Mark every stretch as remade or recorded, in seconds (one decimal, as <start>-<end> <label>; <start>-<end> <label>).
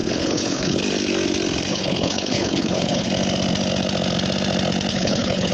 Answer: 0.0-0.8 remade; 0.8-1.7 recorded; 1.7-3.1 remade; 3.1-4.9 recorded; 4.9-5.5 remade